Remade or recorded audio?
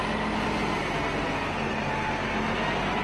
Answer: recorded